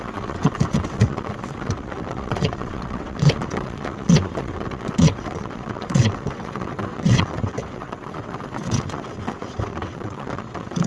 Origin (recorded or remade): remade